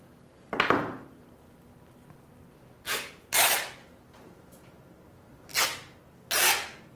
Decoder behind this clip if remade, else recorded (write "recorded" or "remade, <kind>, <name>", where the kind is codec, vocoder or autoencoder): recorded